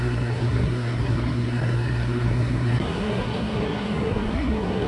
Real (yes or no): no